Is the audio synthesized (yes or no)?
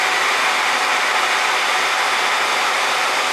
no